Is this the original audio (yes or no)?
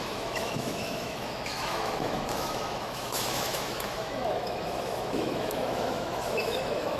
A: no